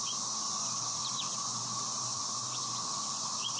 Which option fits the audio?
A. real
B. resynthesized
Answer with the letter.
B